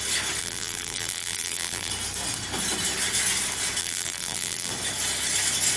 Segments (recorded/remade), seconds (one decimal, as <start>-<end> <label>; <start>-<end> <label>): 0.0-0.4 recorded; 0.4-1.9 remade; 1.9-3.8 recorded; 3.8-4.7 remade; 4.7-5.8 recorded